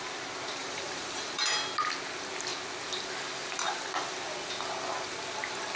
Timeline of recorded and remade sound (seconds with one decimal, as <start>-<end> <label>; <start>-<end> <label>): 0.0-0.6 recorded; 0.6-1.4 remade; 1.4-5.8 recorded